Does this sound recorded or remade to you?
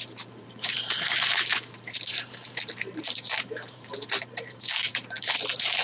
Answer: remade